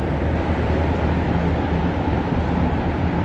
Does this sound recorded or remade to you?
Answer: remade